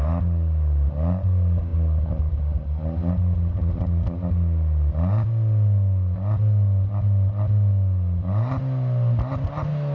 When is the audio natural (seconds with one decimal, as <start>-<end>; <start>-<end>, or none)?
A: 0.0-9.9